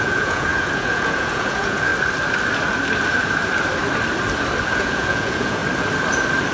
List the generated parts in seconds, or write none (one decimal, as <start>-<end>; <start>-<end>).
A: 0.0-1.9; 4.7-5.6